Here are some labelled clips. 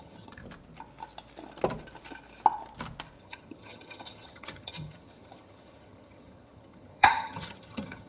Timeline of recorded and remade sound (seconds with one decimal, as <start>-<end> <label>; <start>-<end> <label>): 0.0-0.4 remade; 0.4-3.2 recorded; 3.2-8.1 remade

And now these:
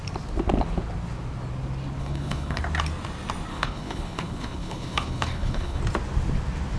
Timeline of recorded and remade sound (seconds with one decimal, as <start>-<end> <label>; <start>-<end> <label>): 0.0-2.0 recorded; 2.0-2.6 remade; 2.6-3.5 recorded; 3.5-5.8 remade; 5.8-6.8 recorded

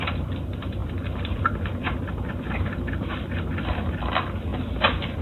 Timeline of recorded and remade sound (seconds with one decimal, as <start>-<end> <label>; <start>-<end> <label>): 0.0-4.5 remade; 4.5-5.2 recorded